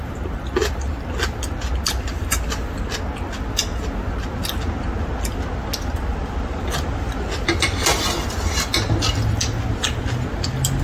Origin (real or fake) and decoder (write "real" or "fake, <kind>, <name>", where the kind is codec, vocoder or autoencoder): real